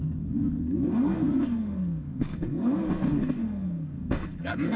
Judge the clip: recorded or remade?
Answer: remade